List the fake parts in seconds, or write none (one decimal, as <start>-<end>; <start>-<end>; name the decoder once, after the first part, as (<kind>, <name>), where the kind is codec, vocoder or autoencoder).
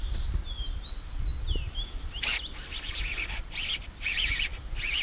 none